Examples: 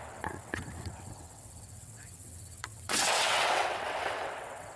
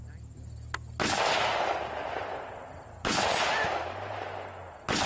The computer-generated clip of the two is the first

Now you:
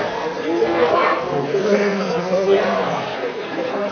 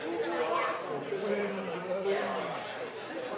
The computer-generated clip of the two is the first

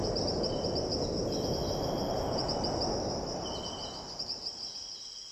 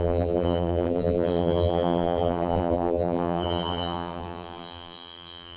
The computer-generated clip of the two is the second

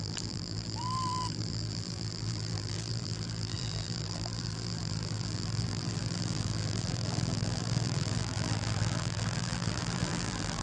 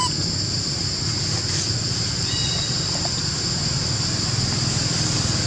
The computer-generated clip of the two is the first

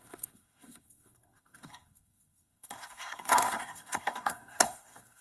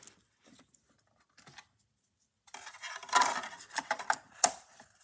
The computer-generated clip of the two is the first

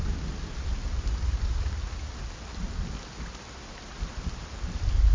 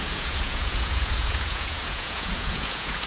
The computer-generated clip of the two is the second